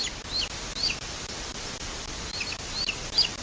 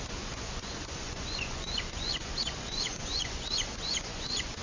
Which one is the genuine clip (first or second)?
first